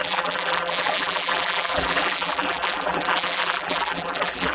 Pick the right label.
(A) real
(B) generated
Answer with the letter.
B